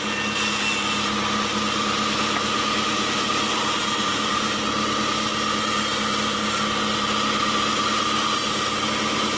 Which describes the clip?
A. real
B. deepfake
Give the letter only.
A